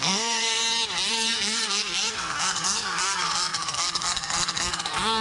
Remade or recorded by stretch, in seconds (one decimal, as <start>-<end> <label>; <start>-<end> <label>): 0.0-0.6 remade; 0.6-1.1 recorded; 1.1-5.2 remade